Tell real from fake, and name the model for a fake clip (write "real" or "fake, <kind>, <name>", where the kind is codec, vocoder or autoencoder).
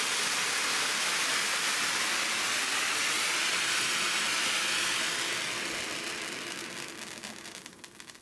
real